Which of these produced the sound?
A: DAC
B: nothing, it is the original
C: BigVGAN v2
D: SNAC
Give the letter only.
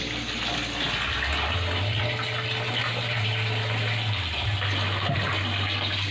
B